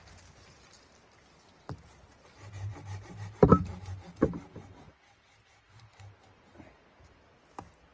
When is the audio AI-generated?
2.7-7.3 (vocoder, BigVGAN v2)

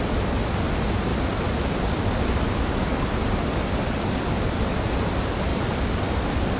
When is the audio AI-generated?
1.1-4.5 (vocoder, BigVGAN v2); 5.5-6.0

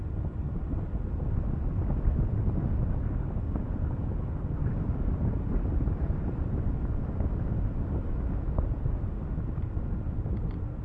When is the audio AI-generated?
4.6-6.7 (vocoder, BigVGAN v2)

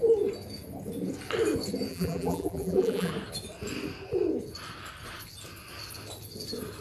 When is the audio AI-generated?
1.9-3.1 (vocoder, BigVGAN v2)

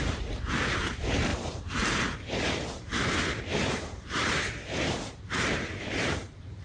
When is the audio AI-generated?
0.0-6.6 (vocoder, BigVGAN v2)